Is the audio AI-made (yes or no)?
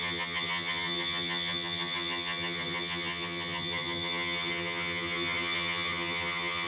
yes